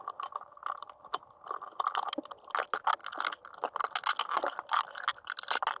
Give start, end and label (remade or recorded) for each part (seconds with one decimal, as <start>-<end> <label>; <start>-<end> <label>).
0.0-5.8 recorded